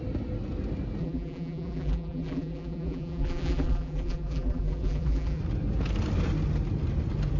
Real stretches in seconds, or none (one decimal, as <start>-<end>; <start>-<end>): 0.0-1.0; 5.4-7.4